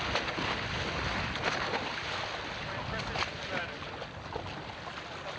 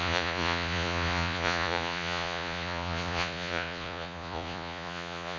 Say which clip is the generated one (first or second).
second